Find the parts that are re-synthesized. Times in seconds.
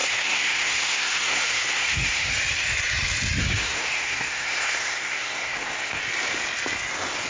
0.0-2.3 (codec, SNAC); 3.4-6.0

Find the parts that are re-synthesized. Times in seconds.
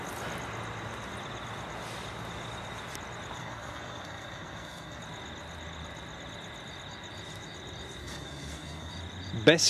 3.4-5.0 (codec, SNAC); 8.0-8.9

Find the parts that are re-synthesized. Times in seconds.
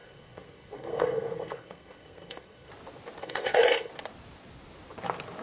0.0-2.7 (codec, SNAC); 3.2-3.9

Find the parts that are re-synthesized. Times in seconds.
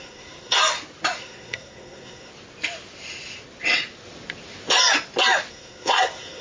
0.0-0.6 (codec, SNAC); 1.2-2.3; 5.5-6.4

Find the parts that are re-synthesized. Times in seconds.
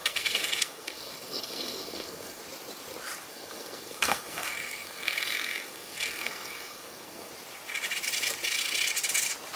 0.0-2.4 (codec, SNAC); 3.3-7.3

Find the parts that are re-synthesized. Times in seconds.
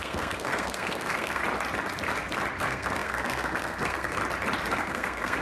0.0-1.4 (codec, SNAC); 2.6-4.2; 4.7-5.4